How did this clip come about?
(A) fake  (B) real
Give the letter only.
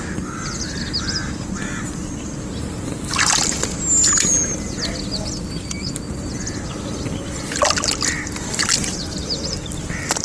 B